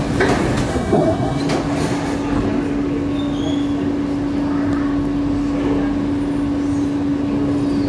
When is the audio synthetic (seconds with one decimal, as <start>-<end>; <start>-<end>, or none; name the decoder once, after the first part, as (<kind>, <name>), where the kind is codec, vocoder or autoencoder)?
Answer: 0.7-1.4 (codec, SNAC)